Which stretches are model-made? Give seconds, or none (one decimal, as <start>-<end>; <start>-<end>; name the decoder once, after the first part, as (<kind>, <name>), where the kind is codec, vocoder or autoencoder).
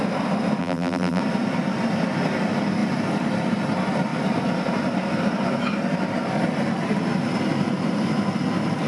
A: 0.6-1.2 (vocoder, BigVGAN v2)